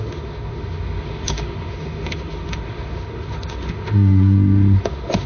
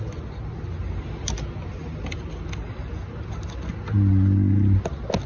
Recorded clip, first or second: second